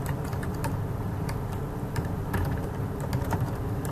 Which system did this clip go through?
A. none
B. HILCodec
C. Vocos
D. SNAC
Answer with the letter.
A